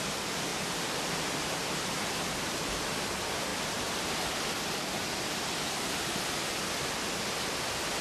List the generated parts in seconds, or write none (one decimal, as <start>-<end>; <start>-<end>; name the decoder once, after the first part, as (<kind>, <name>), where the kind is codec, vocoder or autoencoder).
none